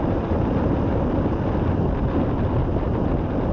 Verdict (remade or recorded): recorded